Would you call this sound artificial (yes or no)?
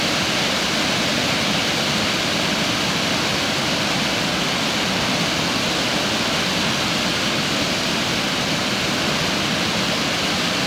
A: no